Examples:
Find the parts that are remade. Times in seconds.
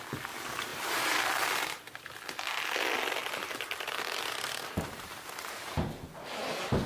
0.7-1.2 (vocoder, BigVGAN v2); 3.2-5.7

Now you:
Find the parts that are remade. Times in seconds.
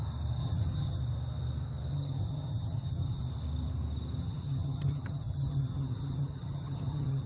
0.4-1.0 (vocoder, HiFi-GAN); 1.9-3.2; 4.2-7.3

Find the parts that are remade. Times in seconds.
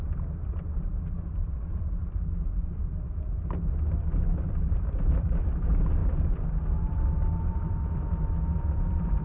0.0-6.0 (vocoder, BigVGAN v2); 8.6-9.2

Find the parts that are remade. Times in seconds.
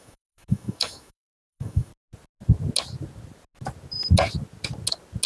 0.0-1.9 (autoencoder, DAC-VAE)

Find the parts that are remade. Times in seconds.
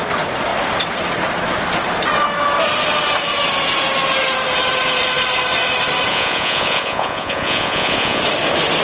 6.1-8.2 (vocoder, Vocos)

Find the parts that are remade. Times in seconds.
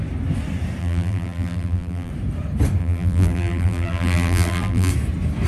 0.8-2.1 (vocoder, BigVGAN v2); 2.8-4.9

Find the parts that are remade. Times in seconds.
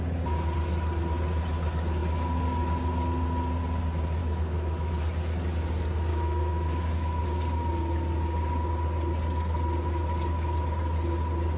4.2-5.0 (autoencoder, DAC-VAE); 6.1-7.2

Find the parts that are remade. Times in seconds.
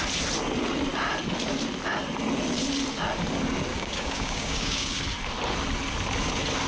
3.7-5.0 (codec, DAC)